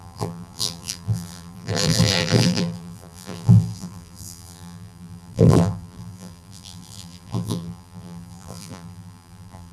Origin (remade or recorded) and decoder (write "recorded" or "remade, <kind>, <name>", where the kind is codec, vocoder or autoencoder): remade, vocoder, BigVGAN v2